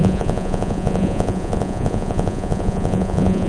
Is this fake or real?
fake